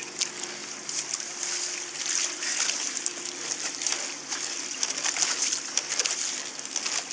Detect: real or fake real